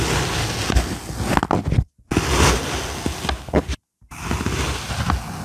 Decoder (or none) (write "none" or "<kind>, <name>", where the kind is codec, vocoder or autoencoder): none